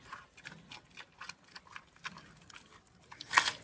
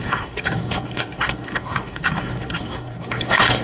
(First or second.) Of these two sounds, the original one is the first